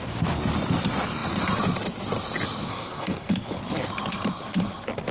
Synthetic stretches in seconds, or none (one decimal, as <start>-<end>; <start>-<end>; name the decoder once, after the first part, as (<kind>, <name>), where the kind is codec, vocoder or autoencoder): 2.7-3.3 (codec, SNAC)